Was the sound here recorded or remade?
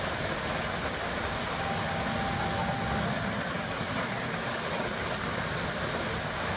recorded